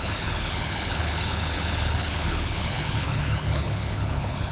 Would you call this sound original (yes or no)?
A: no